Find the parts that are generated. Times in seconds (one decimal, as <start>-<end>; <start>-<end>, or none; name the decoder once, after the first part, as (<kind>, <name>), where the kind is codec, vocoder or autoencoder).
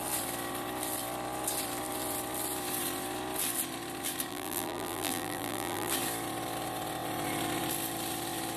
4.3-5.9 (vocoder, BigVGAN v2)